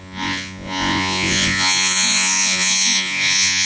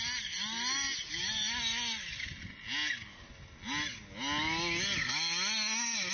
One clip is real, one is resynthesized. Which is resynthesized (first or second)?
first